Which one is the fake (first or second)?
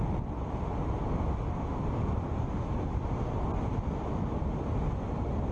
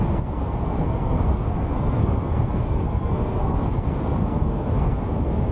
second